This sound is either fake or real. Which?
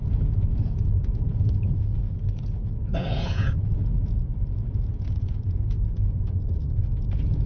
fake